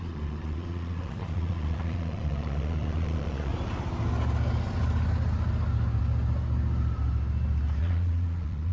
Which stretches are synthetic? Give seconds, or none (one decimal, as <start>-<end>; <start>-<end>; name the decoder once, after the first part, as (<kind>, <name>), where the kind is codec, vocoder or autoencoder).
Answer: 0.0-3.5 (vocoder, Vocos); 7.8-8.7